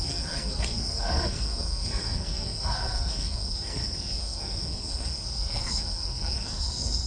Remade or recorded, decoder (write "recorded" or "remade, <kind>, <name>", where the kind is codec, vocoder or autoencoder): remade, codec, SNAC